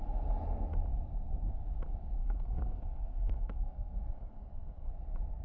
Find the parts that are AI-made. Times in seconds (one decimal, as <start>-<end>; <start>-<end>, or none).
2.2-4.9